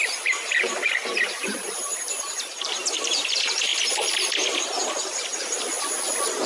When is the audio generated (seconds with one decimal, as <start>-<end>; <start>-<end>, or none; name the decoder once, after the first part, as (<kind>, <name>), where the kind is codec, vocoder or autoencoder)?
1.1-3.2 (vocoder, BigVGAN v2)